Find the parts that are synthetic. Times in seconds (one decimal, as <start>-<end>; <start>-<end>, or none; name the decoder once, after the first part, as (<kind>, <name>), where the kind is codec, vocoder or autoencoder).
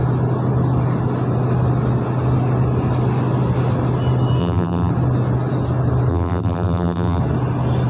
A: 4.4-4.9 (vocoder, BigVGAN v2); 6.1-7.2